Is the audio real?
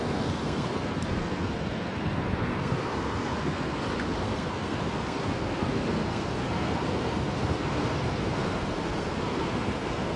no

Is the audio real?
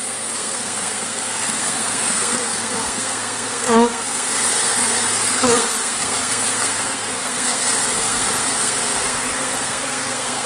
no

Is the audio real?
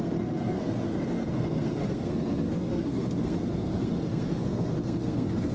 no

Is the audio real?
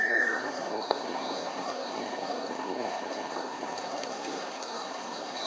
no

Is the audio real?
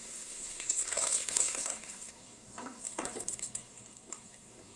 no